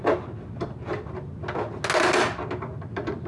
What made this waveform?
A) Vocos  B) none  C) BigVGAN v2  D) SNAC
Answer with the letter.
B